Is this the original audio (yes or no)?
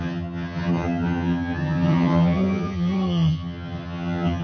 no